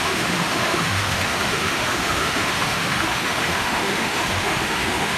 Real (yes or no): no